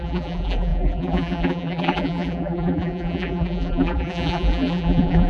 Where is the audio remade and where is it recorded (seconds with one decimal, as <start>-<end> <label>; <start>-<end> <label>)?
0.0-5.3 remade